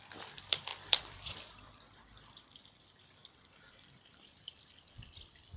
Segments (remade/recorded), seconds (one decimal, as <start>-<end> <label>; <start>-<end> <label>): 0.0-0.7 recorded; 0.7-2.4 remade; 2.4-3.2 recorded; 3.2-4.9 remade; 4.9-5.6 recorded